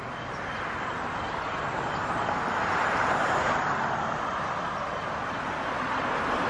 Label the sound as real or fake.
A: real